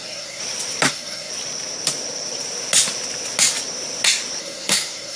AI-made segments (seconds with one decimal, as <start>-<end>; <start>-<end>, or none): 0.0-0.4; 0.9-1.3; 4.4-5.2